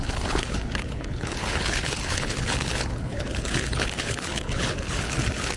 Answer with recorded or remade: remade